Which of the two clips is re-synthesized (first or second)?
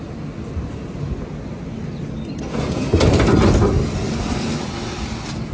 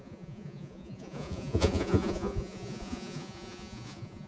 second